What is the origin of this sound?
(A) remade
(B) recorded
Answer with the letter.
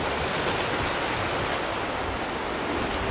B